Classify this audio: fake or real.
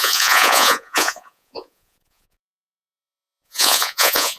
fake